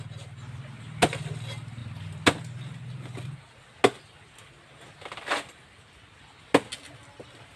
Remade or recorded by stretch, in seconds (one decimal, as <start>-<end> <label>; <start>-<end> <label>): 0.0-7.6 recorded